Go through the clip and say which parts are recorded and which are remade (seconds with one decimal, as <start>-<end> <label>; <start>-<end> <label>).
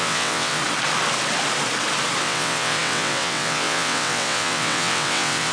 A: 0.0-0.6 remade; 0.6-2.2 recorded; 2.2-5.5 remade